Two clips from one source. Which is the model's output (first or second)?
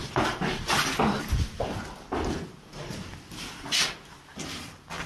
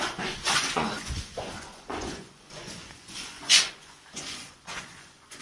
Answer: second